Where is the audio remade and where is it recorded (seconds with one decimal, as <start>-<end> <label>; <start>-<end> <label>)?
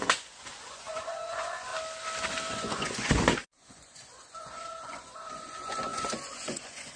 0.0-1.7 remade; 1.7-2.5 recorded; 2.5-7.0 remade